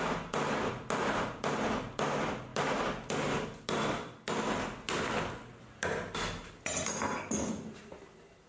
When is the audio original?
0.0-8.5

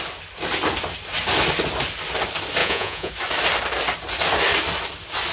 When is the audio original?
0.0-2.6; 3.1-5.3

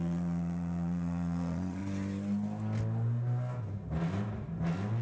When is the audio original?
1.8-5.0

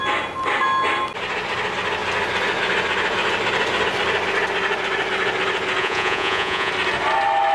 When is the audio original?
0.0-5.8; 6.7-7.5